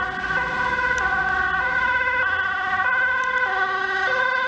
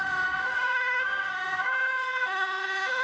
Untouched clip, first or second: first